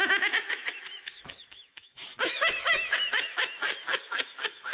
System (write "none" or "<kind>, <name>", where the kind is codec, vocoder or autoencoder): autoencoder, DAC-VAE